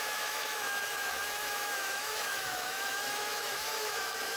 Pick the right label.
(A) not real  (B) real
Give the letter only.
A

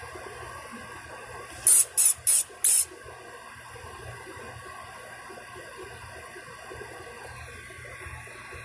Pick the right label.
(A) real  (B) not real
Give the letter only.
A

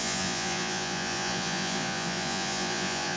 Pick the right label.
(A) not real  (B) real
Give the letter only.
A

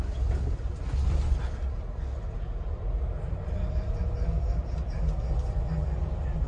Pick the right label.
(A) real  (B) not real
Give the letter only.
A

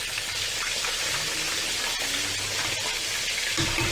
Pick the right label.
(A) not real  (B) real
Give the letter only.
B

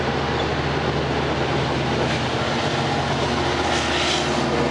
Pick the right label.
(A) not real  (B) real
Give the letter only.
B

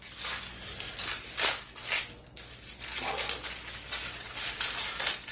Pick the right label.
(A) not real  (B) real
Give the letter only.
B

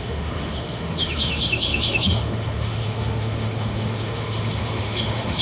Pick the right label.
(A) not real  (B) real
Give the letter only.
A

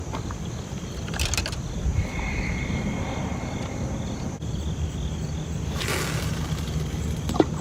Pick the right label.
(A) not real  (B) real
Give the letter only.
B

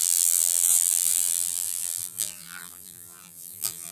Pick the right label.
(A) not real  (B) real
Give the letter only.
A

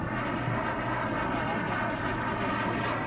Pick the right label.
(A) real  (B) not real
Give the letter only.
A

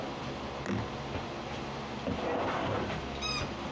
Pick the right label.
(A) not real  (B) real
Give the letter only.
B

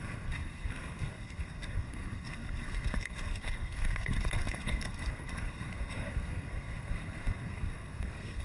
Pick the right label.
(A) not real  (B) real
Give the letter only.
A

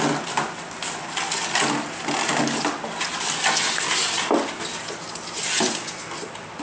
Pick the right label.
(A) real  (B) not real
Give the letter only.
A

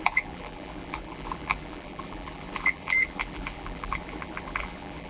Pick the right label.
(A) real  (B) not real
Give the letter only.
B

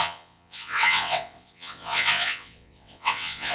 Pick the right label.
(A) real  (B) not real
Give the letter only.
B